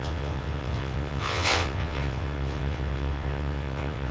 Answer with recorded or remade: remade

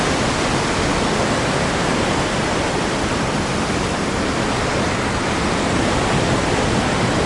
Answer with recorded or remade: recorded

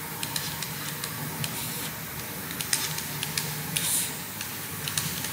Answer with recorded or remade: recorded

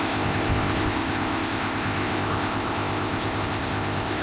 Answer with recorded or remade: remade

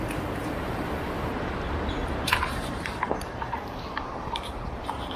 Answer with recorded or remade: remade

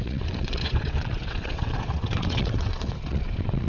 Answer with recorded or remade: remade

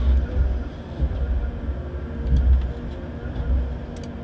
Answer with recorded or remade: recorded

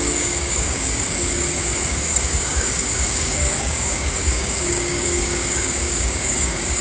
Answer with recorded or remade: remade